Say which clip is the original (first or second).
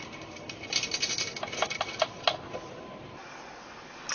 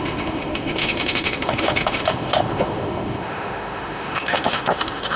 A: first